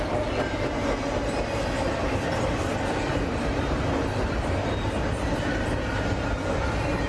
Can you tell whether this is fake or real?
real